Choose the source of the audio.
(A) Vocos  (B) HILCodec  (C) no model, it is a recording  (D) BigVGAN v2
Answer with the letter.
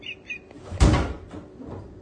D